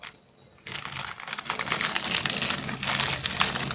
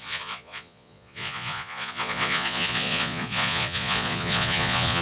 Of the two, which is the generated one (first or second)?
second